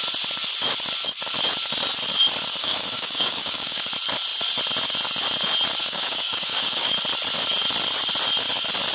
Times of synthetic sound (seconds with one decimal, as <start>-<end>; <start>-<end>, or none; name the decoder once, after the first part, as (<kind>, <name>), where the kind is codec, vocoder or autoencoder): 2.6-3.9 (codec, DAC); 5.8-6.9